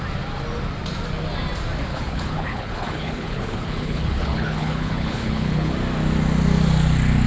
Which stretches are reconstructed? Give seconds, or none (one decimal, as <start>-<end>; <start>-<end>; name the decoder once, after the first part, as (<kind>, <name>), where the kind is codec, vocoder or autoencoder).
1.9-5.7 (codec, HILCodec)